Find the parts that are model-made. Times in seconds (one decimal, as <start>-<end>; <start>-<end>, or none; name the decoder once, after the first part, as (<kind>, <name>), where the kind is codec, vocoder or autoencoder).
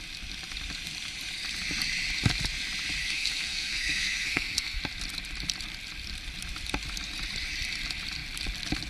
3.0-4.8 (codec, SNAC)